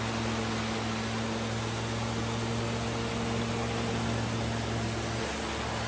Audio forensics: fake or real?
real